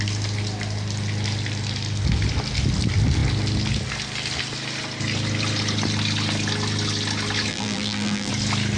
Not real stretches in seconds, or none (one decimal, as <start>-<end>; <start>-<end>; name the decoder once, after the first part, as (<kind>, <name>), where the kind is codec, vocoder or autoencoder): 7.5-8.3 (vocoder, BigVGAN v2)